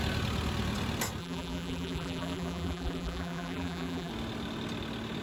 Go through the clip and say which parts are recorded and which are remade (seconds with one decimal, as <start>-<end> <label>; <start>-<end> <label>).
0.0-1.2 recorded; 1.2-4.1 remade; 4.1-5.2 recorded